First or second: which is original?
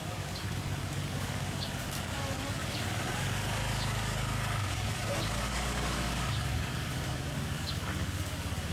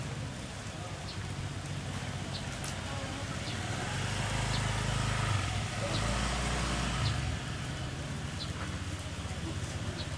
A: second